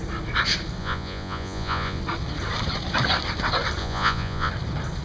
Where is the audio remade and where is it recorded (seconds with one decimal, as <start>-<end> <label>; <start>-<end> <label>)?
0.0-0.8 recorded; 0.8-2.0 remade; 2.0-3.8 recorded; 3.8-4.5 remade; 4.5-5.0 recorded